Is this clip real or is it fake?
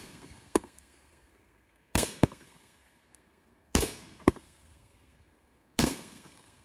fake